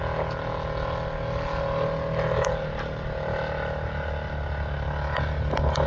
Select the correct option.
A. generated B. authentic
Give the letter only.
B